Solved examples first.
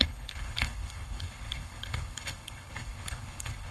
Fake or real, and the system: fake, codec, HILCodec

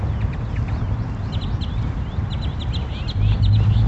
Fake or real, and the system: real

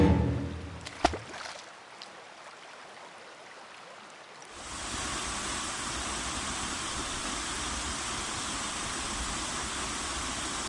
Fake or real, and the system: real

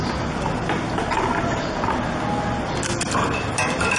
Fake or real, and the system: real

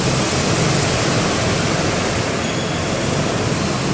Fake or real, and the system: real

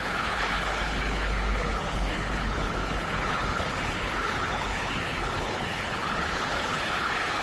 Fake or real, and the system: fake, codec, HILCodec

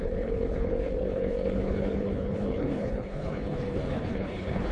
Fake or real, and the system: fake, codec, HILCodec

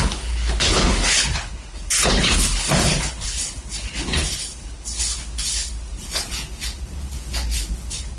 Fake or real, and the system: fake, codec, HILCodec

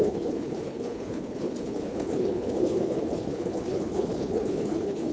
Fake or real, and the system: fake, codec, HILCodec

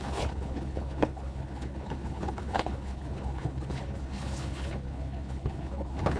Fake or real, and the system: fake, codec, HILCodec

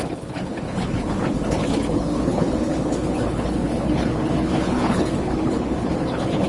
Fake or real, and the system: fake, codec, HILCodec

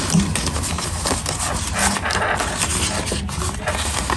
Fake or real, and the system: real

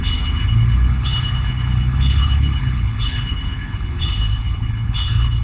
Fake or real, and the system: fake, codec, HILCodec